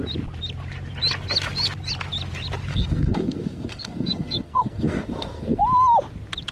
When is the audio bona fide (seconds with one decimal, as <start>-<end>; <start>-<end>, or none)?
0.0-2.7; 5.6-6.5